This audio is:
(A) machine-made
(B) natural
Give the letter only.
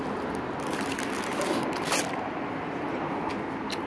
B